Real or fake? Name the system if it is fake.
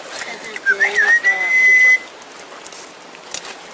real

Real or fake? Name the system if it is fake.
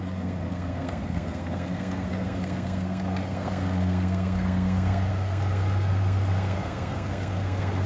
fake, codec, SNAC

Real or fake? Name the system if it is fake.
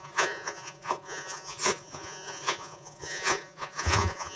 fake, vocoder, Vocos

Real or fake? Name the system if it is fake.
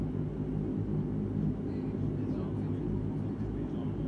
real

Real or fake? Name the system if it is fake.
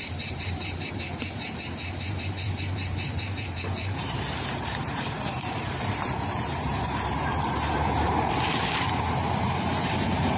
fake, vocoder, BigVGAN v2